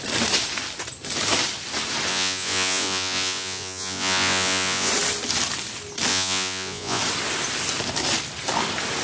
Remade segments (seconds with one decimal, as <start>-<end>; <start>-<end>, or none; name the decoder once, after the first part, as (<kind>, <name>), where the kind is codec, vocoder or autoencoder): 2.1-4.9 (vocoder, Vocos); 6.1-7.0